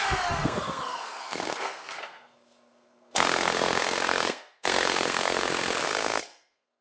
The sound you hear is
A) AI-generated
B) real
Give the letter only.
A